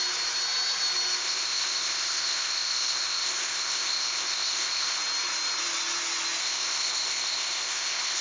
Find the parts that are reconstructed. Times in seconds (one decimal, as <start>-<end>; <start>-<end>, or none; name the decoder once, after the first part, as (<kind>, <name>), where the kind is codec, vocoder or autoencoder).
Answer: 1.2-5.0 (codec, ZipCodec); 6.4-8.2